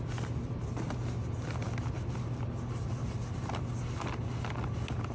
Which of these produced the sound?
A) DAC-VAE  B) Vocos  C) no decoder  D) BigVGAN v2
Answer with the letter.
C